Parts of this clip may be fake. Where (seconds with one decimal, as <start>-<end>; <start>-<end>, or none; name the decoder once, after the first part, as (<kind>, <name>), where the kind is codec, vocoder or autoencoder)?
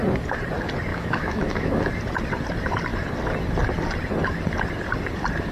0.9-1.8 (autoencoder, DAC-VAE)